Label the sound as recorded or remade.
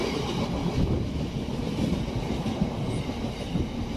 recorded